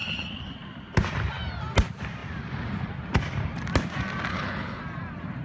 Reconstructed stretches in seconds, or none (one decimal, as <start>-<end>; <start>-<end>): 4.3-4.8

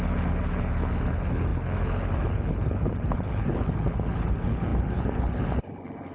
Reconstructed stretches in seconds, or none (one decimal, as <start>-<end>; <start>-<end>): 0.0-6.1